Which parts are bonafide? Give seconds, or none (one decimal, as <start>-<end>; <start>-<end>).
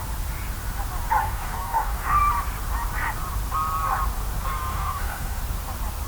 0.0-1.2; 2.2-4.7; 5.4-6.1